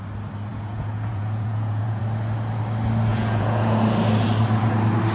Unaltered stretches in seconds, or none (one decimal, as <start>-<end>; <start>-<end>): 0.0-0.5; 2.0-3.1; 3.8-5.1